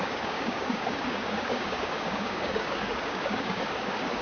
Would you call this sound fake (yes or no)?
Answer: yes